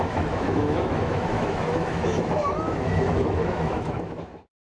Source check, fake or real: fake